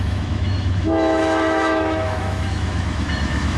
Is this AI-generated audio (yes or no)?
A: yes